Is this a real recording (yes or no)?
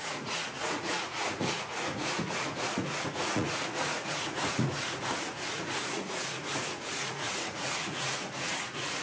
no